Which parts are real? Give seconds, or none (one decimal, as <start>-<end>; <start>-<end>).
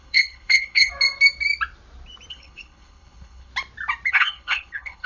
0.9-2.3; 3.5-4.1